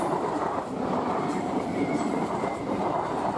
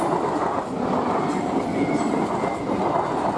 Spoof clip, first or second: first